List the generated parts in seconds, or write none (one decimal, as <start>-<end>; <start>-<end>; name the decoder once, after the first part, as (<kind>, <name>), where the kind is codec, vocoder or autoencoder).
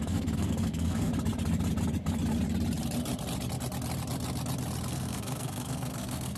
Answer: 0.0-1.1 (codec, SNAC); 4.9-6.4